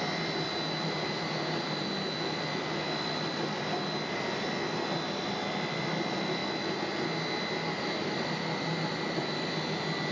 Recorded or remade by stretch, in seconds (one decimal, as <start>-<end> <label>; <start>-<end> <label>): 0.0-10.1 recorded